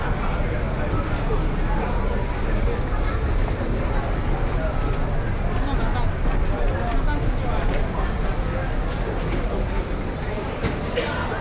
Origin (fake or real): real